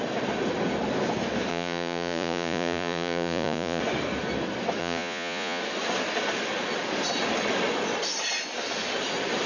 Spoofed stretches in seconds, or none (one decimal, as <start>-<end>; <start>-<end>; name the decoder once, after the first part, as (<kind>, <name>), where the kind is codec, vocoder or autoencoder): 1.5-3.8 (vocoder, Vocos); 4.8-5.6